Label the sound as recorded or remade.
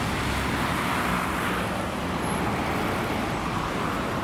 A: recorded